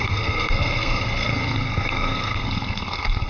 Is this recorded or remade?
remade